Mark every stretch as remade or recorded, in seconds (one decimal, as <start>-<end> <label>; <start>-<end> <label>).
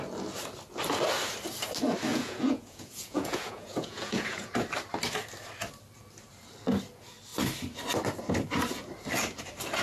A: 0.0-2.1 recorded; 2.1-4.5 remade; 4.5-9.8 recorded